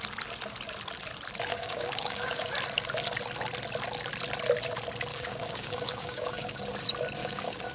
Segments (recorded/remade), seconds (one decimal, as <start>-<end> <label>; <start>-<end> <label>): 0.0-1.5 recorded; 1.5-2.5 remade; 2.5-5.1 recorded; 5.1-6.6 remade; 6.6-7.2 recorded; 7.2-7.7 remade